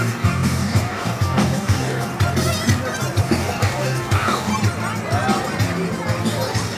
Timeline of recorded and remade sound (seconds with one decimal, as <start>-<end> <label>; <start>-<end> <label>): 0.0-2.1 remade; 2.1-3.2 recorded; 3.2-4.5 remade; 4.5-6.8 recorded